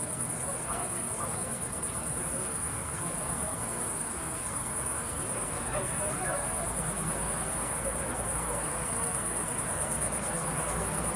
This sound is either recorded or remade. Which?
remade